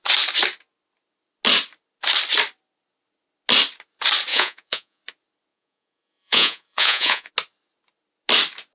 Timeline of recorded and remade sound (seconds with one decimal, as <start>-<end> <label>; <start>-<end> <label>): 0.0-4.3 recorded; 4.3-5.0 remade; 5.0-5.5 recorded; 5.5-7.3 remade; 7.3-8.7 recorded